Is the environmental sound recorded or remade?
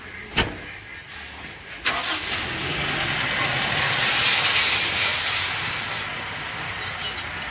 recorded